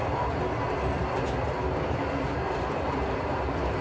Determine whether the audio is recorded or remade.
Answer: recorded